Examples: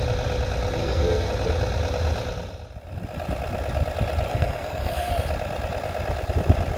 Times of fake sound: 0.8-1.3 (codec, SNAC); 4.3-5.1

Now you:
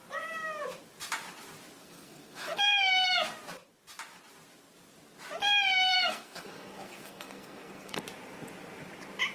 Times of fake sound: 1.8-2.9 (codec, SNAC); 5.9-8.0